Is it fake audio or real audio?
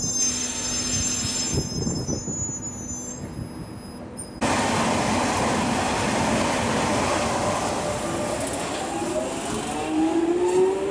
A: real